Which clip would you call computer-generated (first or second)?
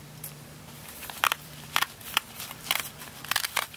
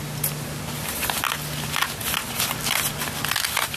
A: first